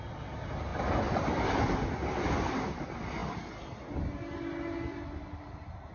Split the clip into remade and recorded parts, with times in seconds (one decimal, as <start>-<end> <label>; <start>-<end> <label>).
0.0-5.9 recorded